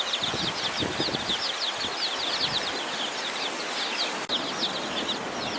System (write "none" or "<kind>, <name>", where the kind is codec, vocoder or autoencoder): none